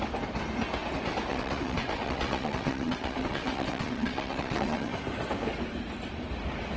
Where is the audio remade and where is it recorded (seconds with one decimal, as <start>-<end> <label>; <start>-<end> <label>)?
0.0-1.3 recorded; 1.3-4.9 remade; 4.9-6.8 recorded